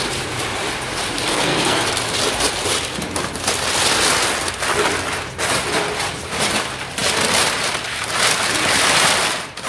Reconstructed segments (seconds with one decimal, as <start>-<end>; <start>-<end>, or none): 1.3-1.8